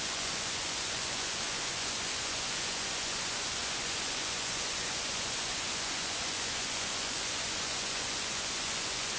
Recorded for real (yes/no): no